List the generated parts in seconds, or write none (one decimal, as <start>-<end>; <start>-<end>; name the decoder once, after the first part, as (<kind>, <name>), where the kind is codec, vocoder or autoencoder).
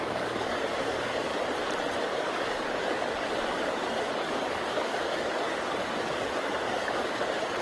0.0-1.3 (codec, DAC); 2.0-7.6